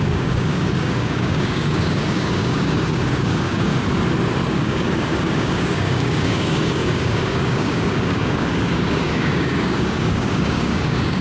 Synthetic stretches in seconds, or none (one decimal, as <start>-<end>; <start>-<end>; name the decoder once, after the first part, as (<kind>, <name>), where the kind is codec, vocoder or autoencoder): 0.0-3.7 (codec, DAC); 4.5-11.2